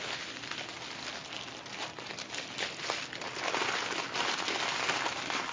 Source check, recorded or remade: recorded